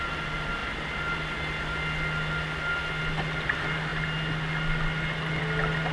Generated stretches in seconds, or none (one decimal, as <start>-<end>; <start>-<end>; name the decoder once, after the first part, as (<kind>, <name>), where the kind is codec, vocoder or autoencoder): 0.6-1.2 (vocoder, BigVGAN v2)